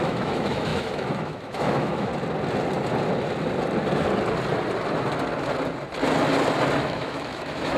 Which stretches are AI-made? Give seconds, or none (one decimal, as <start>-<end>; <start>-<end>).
0.0-2.1; 6.8-7.8